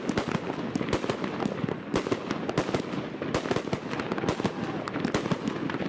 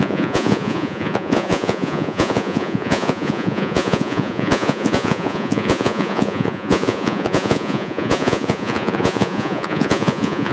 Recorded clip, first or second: first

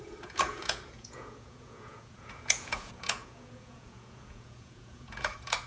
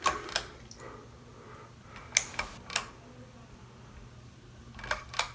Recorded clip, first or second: second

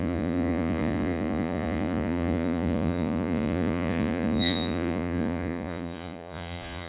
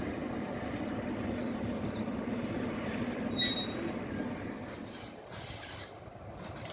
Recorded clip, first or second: second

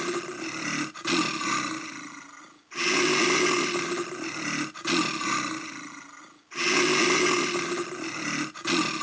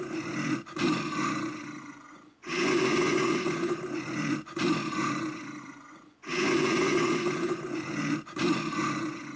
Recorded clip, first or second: first